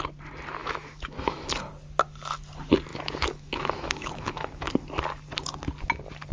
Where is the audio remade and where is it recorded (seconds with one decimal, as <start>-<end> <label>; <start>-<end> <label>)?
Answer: 0.0-0.6 recorded; 0.6-1.5 remade; 1.5-2.9 recorded; 2.9-4.7 remade; 4.7-6.3 recorded